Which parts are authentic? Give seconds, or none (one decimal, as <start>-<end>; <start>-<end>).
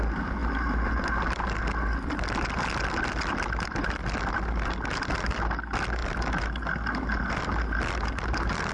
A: 0.0-8.7